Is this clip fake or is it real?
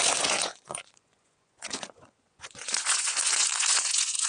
fake